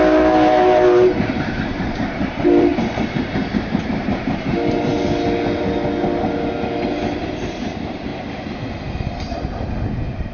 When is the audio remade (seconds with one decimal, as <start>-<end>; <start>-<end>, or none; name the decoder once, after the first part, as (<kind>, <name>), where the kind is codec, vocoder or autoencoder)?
0.0-4.9 (vocoder, BigVGAN v2); 7.2-8.1; 9.1-10.3